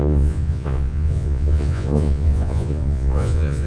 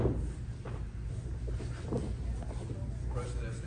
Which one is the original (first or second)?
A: second